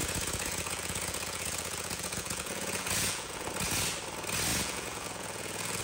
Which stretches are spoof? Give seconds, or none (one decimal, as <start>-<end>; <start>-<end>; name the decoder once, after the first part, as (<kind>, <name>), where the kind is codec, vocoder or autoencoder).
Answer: 0.0-3.5 (vocoder, Vocos); 4.5-5.8